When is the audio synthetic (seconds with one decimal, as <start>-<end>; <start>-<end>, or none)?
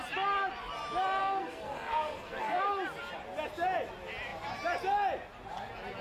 1.2-2.6